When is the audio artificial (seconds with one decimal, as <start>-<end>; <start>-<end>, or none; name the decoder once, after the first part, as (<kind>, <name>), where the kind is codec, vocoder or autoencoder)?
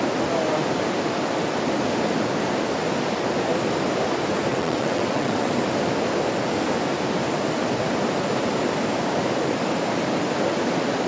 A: 4.5-5.5 (vocoder, WaveNeXt)